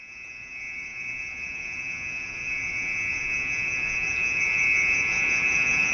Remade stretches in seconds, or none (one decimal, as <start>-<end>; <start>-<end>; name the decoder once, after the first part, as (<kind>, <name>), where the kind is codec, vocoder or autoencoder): 0.0-5.9 (vocoder, Vocos)